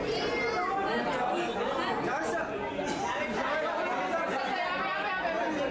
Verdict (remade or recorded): recorded